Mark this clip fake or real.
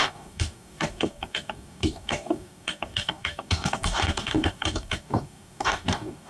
fake